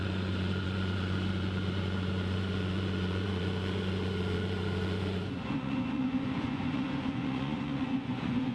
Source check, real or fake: fake